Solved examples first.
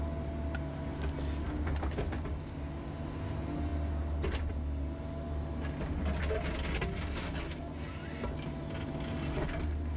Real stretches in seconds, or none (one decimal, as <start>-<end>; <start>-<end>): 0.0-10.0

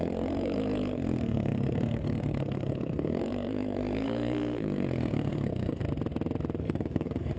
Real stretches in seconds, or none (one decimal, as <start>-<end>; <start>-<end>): 5.8-6.6

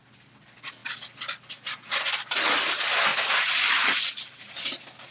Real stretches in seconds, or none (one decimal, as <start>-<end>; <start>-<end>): 0.0-5.1

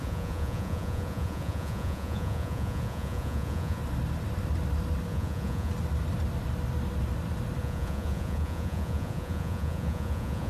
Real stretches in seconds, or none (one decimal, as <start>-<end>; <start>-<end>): 3.8-5.1; 5.7-7.6